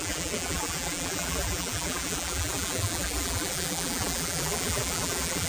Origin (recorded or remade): remade